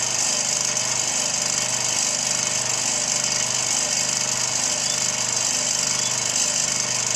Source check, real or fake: real